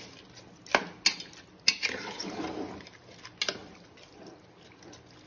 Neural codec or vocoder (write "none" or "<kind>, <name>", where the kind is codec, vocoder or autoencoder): none